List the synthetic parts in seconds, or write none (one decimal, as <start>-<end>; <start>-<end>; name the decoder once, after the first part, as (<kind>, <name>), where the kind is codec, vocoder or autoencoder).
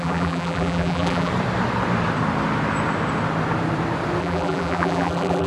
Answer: 0.0-1.3 (vocoder, BigVGAN v2); 4.2-5.5